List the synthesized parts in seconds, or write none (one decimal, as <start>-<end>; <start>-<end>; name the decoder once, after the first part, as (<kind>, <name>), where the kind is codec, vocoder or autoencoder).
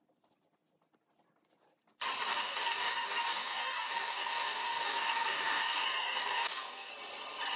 2.3-6.9 (codec, DAC)